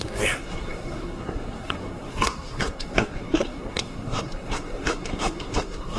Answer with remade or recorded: remade